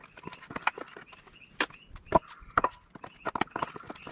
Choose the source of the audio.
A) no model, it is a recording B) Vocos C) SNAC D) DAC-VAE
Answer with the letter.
A